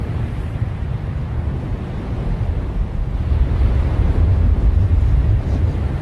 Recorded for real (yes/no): no